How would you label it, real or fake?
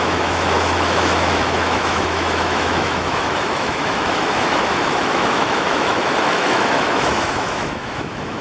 fake